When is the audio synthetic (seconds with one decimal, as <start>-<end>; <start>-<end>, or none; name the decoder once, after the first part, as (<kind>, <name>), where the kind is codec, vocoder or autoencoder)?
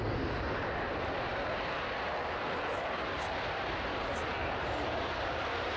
4.4-5.3 (vocoder, BigVGAN v2)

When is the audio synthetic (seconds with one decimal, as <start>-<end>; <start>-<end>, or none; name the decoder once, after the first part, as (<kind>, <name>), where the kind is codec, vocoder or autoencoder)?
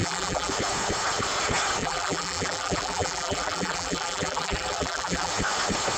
0.0-0.5 (vocoder, BigVGAN v2); 1.8-5.3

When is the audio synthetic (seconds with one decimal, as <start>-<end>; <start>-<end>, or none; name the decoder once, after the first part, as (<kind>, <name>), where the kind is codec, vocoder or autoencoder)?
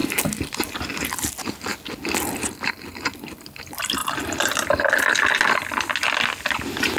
0.0-0.7 (vocoder, BigVGAN v2)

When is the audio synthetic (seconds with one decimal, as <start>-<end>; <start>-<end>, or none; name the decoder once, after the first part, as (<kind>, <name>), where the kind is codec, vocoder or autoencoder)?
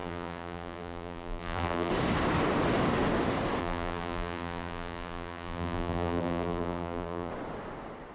0.0-1.9 (vocoder, BigVGAN v2); 3.6-7.3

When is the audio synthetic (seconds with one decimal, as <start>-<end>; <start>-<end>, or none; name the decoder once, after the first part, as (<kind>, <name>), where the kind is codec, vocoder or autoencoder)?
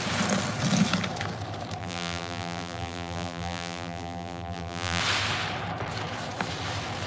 1.8-5.0 (vocoder, BigVGAN v2)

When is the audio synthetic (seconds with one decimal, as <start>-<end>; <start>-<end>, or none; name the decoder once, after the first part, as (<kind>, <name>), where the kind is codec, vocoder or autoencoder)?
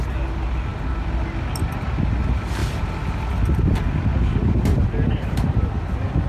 4.7-5.7 (vocoder, BigVGAN v2)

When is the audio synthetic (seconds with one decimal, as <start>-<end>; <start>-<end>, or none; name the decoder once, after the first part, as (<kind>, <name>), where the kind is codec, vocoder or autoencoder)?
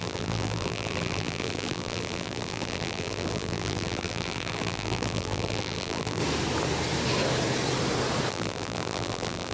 0.0-6.2 (vocoder, BigVGAN v2); 8.3-9.5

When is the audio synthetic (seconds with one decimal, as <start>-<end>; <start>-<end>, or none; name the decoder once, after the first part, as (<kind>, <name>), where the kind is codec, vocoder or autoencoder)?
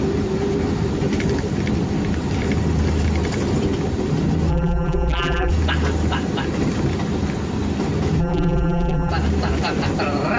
4.5-5.5 (vocoder, BigVGAN v2); 8.2-9.1